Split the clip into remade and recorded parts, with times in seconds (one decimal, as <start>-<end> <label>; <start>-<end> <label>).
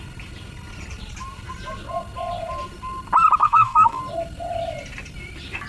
0.0-3.4 recorded; 3.4-4.0 remade; 4.0-5.7 recorded